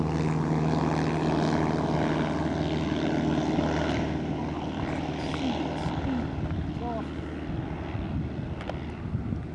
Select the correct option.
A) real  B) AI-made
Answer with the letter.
A